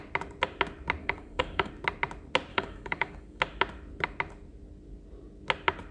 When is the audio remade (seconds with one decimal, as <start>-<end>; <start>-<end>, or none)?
1.0-1.7; 2.5-3.4